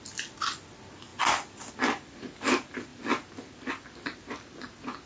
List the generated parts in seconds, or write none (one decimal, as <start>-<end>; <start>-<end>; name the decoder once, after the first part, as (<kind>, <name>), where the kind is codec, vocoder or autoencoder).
none